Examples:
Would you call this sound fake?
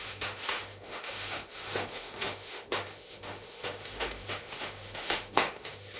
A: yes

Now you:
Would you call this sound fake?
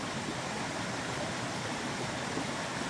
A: no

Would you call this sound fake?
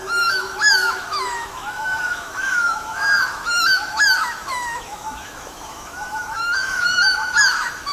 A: yes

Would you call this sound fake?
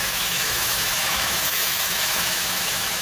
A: yes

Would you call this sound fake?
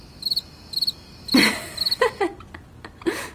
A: no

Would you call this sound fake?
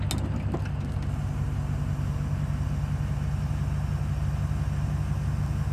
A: no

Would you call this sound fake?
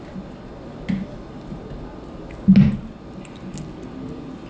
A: no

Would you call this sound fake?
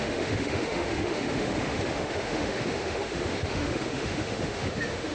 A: yes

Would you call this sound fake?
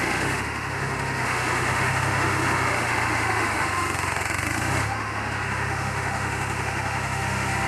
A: yes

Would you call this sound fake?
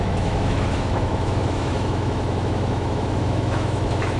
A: yes